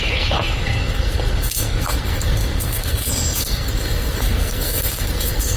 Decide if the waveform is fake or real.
fake